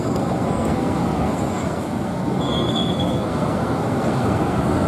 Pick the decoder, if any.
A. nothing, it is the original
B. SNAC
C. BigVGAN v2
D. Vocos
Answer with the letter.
B